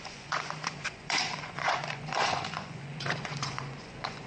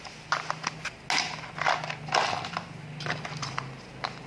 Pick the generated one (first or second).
first